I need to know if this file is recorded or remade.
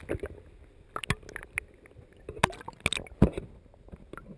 recorded